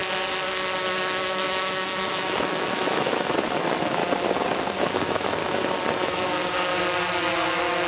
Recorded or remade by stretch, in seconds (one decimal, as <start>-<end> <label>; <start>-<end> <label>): 0.0-0.8 recorded; 0.8-4.0 remade; 4.0-4.9 recorded; 4.9-5.4 remade; 5.4-5.9 recorded; 5.9-6.7 remade; 6.7-7.3 recorded; 7.3-7.9 remade